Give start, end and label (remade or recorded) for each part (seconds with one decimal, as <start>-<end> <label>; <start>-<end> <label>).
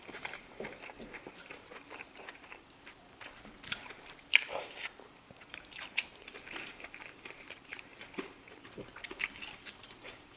0.0-10.4 remade